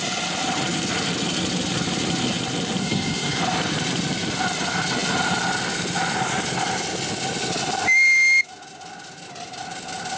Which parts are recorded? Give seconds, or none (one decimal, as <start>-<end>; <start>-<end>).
0.0-2.8; 3.4-10.2